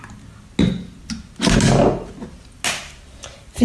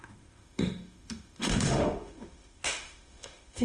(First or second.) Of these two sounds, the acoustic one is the first